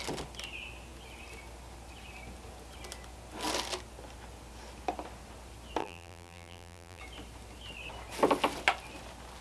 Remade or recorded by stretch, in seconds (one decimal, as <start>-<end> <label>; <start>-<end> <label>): 0.0-5.8 recorded; 5.8-7.0 remade; 7.0-9.4 recorded